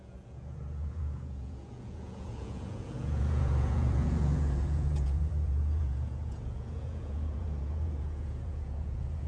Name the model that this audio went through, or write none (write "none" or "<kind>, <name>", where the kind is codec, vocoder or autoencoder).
vocoder, Vocos